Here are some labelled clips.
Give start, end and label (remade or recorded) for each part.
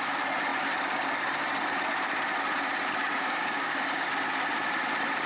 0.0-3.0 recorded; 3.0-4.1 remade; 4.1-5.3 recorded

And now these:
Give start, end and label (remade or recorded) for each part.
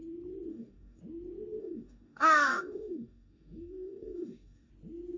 0.0-0.5 recorded; 0.5-1.0 remade; 1.0-1.6 recorded; 1.6-4.7 remade; 4.7-5.2 recorded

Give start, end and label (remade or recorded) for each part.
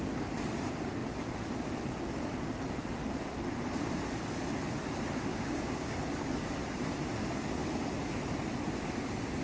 0.0-5.3 recorded; 5.3-5.9 remade; 5.9-9.4 recorded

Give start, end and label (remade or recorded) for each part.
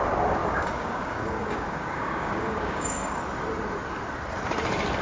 0.0-0.4 recorded; 0.4-3.2 remade; 3.2-5.0 recorded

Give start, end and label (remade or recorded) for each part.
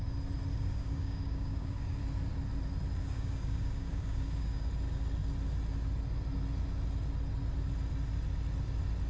0.0-0.5 recorded; 0.5-2.0 remade; 2.0-3.0 recorded; 3.0-4.7 remade; 4.7-9.1 recorded